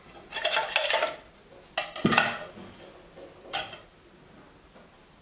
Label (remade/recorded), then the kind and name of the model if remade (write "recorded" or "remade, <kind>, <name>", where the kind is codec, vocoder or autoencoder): recorded